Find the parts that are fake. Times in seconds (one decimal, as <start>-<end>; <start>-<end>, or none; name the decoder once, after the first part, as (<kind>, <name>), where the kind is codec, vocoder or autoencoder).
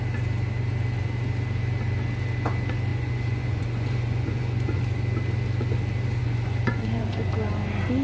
2.9-4.8 (vocoder, Vocos); 6.2-7.3